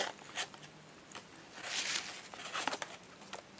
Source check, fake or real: real